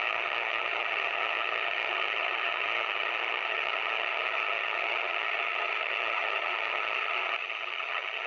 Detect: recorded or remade remade